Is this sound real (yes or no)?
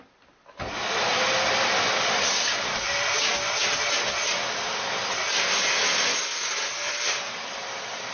yes